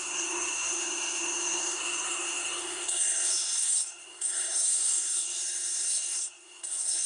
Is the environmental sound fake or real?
fake